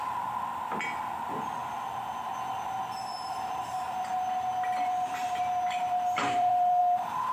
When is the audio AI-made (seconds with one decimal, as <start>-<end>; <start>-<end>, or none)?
1.6-2.8; 6.2-6.8